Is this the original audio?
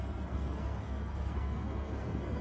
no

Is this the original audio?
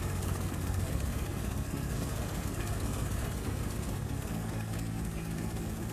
no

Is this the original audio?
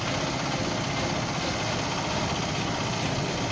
yes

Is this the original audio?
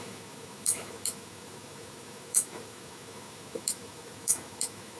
no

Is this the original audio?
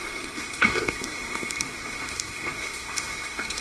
no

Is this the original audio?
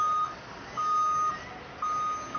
yes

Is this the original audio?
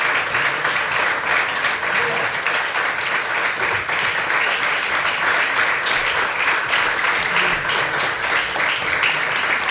yes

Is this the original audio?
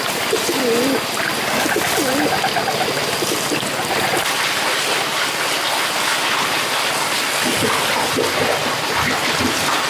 yes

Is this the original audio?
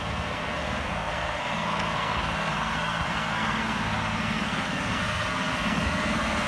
no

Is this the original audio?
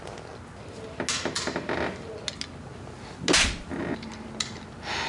yes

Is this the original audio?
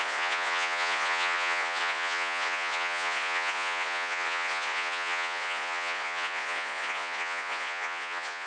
no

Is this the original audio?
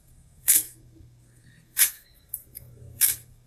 no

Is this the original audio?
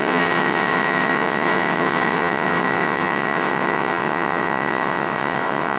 no